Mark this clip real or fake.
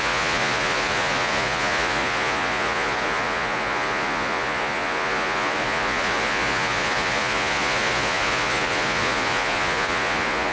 fake